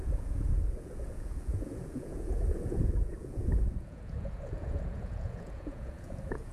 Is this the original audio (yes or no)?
no